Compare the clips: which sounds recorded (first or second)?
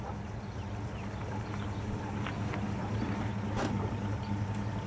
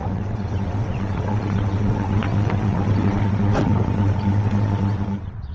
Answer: first